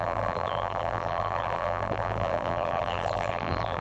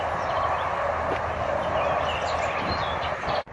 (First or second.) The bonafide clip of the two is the second